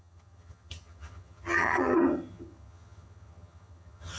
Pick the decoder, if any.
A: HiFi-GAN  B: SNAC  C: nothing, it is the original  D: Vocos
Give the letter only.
A